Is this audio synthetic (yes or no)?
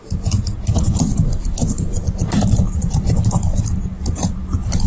no